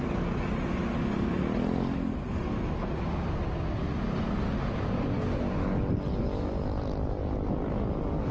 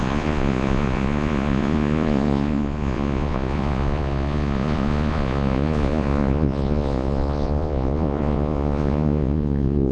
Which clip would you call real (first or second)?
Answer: first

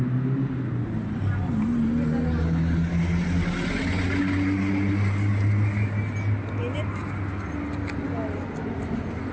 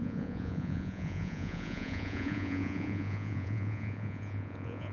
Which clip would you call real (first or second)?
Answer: first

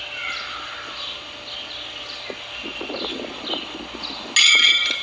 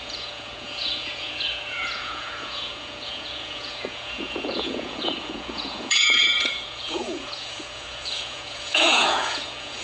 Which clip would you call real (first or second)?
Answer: first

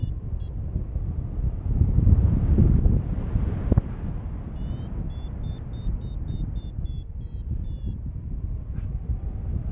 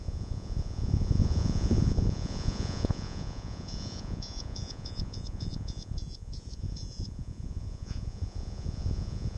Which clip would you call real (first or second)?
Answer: first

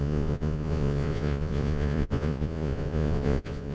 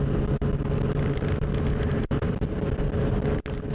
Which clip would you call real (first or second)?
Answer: second